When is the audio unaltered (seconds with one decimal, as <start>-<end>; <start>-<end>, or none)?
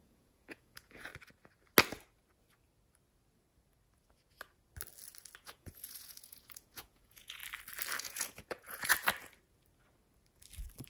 1.1-5.4; 7.4-8.0; 8.9-10.9